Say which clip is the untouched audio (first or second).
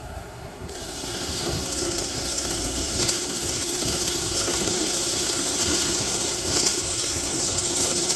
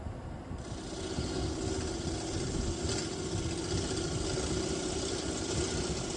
second